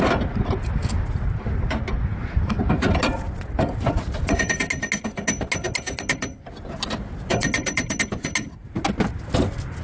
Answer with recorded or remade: recorded